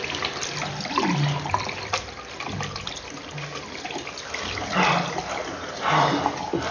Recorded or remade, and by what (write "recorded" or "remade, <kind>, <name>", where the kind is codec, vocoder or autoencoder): recorded